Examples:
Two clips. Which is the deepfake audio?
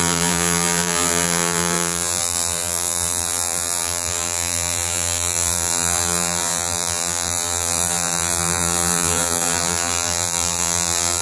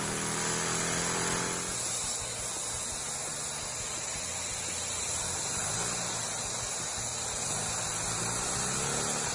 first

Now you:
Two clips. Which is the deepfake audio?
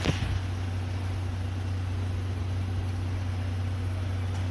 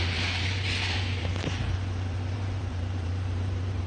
second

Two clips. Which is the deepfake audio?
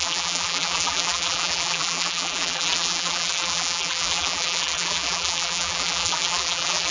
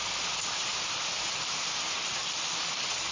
first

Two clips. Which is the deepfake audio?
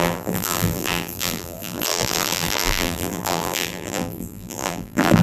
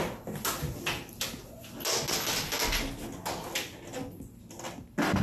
first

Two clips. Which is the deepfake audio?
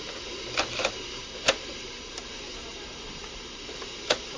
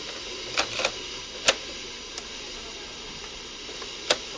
first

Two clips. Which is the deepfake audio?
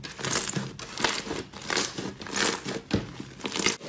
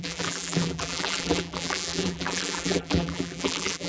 second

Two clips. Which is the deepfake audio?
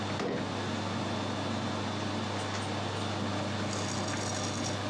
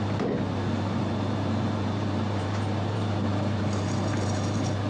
second